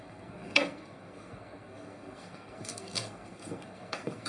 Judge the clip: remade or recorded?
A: remade